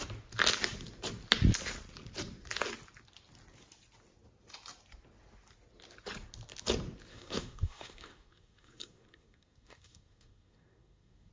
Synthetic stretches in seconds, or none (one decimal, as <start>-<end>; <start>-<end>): 7.1-11.3